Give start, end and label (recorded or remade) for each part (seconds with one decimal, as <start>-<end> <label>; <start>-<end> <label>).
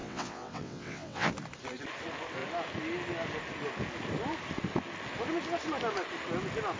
0.0-1.3 remade; 1.3-6.8 recorded